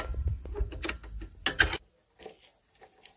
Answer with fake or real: real